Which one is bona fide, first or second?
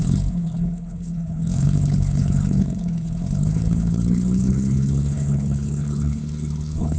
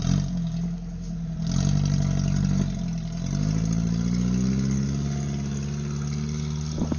second